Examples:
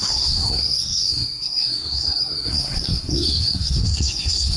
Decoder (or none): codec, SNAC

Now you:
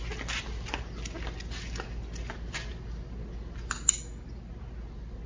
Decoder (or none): none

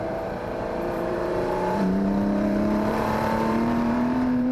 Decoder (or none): vocoder, BigVGAN v2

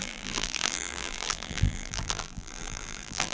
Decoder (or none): vocoder, BigVGAN v2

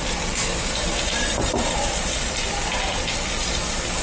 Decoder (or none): none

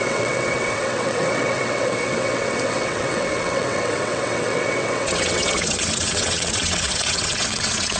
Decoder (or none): vocoder, WaveNeXt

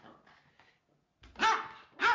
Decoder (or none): none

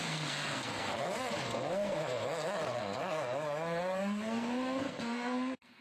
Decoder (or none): codec, SNAC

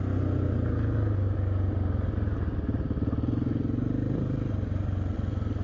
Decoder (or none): none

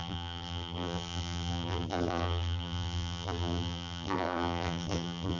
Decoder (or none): vocoder, BigVGAN v2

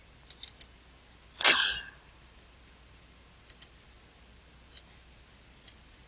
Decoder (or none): none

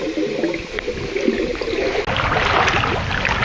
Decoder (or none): none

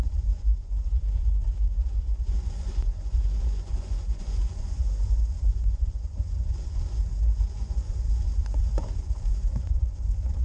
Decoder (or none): vocoder, Vocos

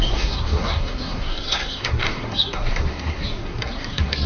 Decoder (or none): codec, SNAC